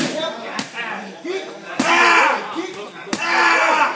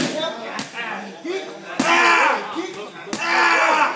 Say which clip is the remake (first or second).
first